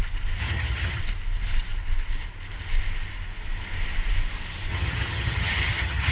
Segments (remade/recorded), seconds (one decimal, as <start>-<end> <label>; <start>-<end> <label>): 0.0-0.4 recorded; 0.4-1.0 remade; 1.0-4.7 recorded; 4.7-6.1 remade